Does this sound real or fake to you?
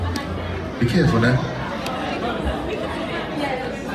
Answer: real